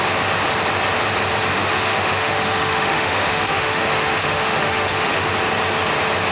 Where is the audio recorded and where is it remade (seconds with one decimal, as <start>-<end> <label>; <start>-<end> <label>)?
0.0-1.5 recorded; 1.5-5.3 remade; 5.3-6.3 recorded